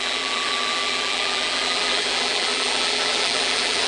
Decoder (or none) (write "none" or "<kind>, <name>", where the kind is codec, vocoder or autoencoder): vocoder, BigVGAN v2